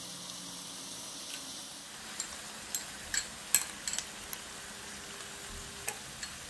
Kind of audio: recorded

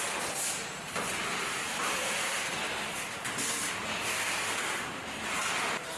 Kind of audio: recorded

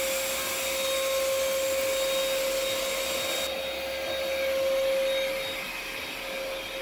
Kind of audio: recorded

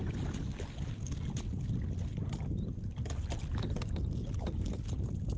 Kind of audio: recorded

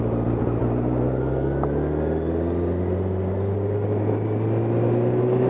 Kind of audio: recorded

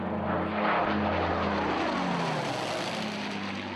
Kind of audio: recorded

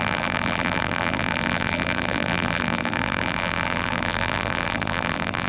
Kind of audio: remade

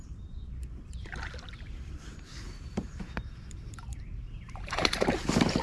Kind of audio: remade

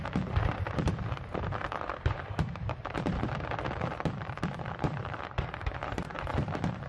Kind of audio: remade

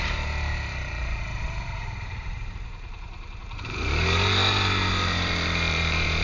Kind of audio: remade